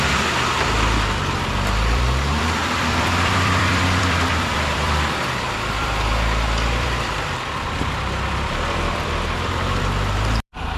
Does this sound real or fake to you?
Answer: fake